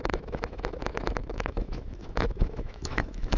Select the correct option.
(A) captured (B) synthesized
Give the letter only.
B